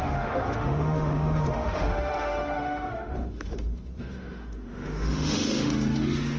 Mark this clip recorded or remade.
remade